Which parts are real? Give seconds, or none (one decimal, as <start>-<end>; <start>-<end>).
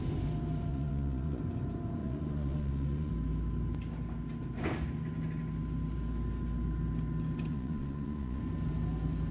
0.0-0.7; 1.4-2.0; 3.1-7.5; 8.4-9.3